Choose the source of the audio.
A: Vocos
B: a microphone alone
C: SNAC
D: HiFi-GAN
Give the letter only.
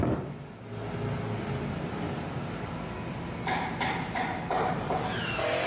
B